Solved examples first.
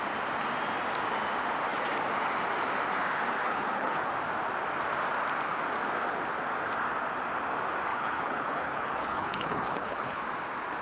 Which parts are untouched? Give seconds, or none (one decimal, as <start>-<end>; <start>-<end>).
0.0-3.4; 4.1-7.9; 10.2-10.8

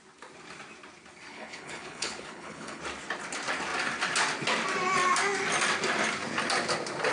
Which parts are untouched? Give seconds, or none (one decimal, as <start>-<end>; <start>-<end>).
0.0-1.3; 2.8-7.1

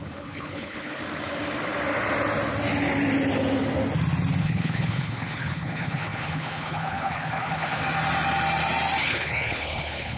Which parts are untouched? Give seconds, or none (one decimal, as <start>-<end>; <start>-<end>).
1.0-4.4; 7.8-9.0